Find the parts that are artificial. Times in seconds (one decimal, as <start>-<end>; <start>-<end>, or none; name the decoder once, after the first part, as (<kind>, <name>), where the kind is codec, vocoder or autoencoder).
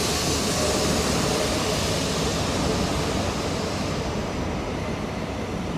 none